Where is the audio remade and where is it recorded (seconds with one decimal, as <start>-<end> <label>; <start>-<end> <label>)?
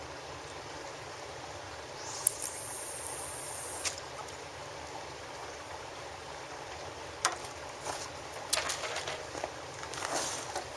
0.0-10.8 recorded